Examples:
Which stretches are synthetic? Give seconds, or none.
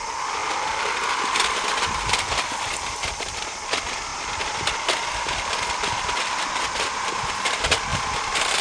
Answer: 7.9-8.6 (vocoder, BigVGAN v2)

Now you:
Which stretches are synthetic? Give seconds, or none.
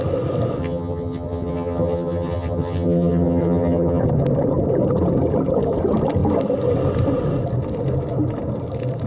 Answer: 0.6-4.0 (vocoder, HiFi-GAN)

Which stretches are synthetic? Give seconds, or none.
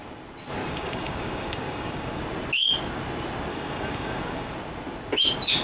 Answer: 0.6-2.2 (codec, DAC); 3.5-4.5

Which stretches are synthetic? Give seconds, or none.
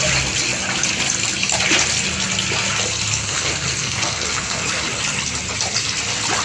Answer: 3.2-4.7 (codec, SNAC)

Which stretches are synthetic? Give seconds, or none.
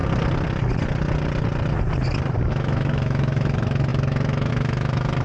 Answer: 2.5-5.2 (autoencoder, DAC-VAE)